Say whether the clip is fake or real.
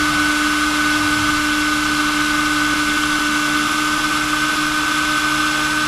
real